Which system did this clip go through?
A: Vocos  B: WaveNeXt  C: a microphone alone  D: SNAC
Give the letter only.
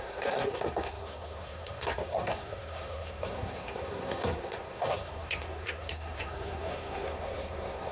D